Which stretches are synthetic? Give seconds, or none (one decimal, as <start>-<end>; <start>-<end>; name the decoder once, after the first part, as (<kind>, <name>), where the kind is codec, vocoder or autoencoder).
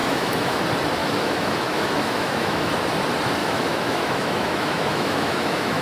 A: 0.0-0.6 (autoencoder, DAC-VAE); 1.0-2.7; 3.4-5.8